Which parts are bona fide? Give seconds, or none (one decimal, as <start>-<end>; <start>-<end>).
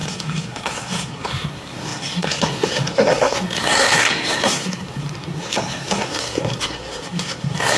none